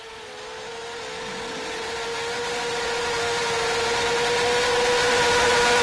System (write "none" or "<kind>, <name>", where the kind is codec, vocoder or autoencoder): none